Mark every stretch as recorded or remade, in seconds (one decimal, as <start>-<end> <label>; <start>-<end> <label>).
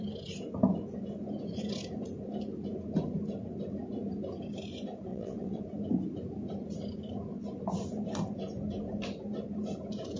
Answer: 0.0-5.1 recorded; 5.1-5.6 remade; 5.6-10.2 recorded